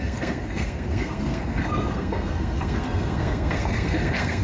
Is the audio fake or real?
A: fake